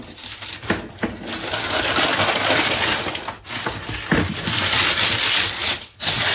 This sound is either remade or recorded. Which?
recorded